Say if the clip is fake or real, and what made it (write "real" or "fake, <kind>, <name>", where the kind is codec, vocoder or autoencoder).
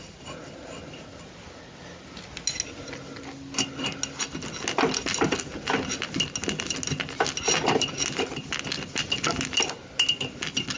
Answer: real